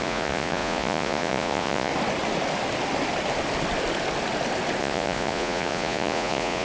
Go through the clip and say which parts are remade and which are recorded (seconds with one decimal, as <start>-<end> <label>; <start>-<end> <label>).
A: 0.0-1.9 remade; 1.9-4.8 recorded; 4.8-6.6 remade